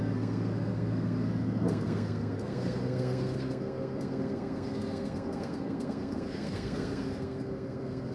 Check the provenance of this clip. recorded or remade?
remade